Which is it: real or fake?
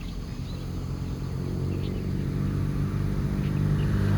real